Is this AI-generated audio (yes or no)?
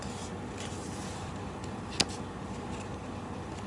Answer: no